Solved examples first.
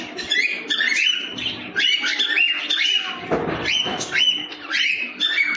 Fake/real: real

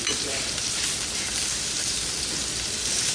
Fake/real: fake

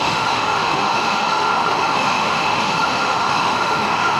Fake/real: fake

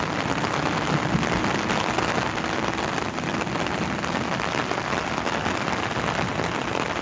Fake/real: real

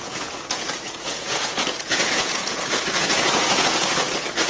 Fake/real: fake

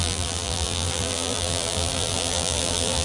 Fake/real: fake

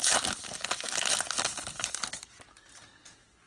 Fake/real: real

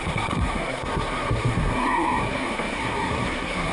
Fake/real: fake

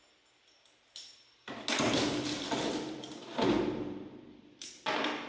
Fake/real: real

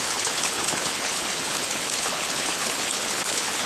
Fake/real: fake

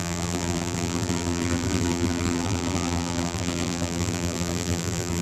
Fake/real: fake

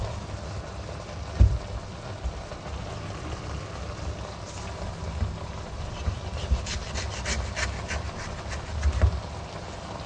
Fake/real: real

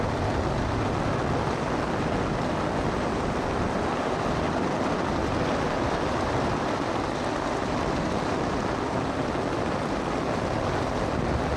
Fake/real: real